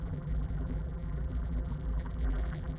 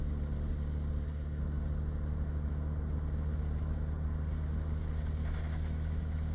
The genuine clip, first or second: second